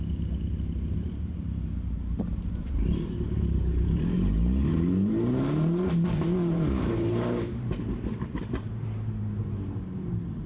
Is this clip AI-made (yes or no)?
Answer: yes